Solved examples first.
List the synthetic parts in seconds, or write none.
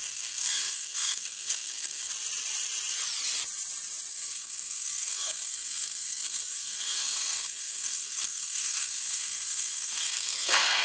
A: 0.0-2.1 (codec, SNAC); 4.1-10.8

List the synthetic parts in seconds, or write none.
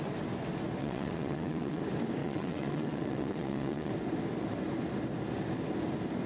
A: 0.8-1.8 (vocoder, WaveNeXt); 2.2-3.9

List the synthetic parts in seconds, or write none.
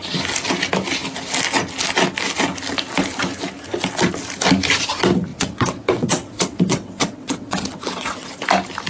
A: 5.3-8.3 (vocoder, WaveNeXt)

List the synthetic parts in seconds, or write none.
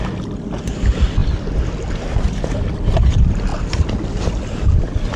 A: none